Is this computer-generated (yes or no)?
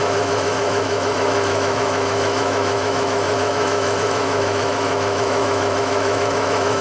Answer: yes